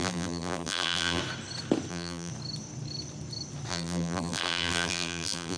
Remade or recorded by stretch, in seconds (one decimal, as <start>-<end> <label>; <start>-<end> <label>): 0.0-1.2 remade; 1.2-1.9 recorded; 1.9-2.3 remade; 2.3-3.7 recorded; 3.7-5.6 remade